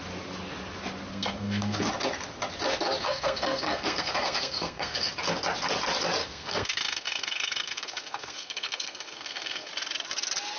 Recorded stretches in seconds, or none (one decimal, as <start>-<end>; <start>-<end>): 0.0-1.1; 1.9-3.0; 5.1-6.2; 9.7-10.6